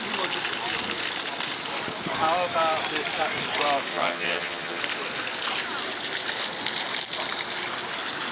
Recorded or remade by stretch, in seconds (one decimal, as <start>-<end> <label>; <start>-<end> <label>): 0.0-3.9 recorded; 3.9-4.8 remade; 4.8-8.3 recorded

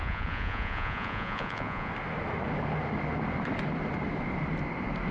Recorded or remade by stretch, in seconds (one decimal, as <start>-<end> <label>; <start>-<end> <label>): 0.0-1.9 remade; 1.9-5.1 recorded

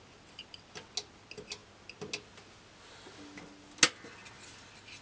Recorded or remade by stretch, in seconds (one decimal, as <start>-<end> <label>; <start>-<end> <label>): 0.0-5.0 recorded

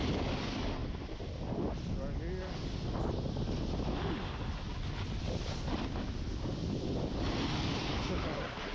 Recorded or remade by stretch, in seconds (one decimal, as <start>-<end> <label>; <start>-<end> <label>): 0.0-8.7 recorded

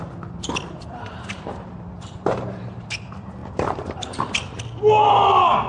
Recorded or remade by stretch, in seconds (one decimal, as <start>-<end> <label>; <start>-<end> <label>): 0.0-0.8 recorded; 0.8-2.9 remade; 2.9-3.4 recorded; 3.4-4.2 remade; 4.2-5.7 recorded